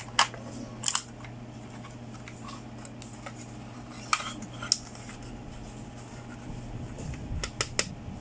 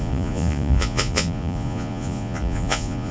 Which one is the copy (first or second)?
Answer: second